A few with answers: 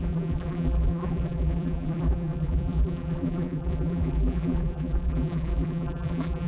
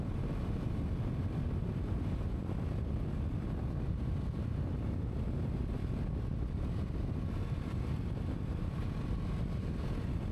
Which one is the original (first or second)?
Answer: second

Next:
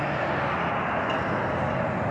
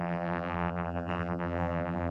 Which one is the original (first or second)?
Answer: first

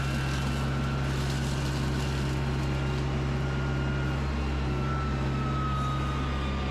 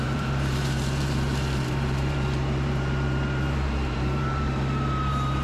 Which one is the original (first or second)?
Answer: first